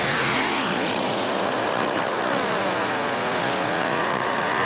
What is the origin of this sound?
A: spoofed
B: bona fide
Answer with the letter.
A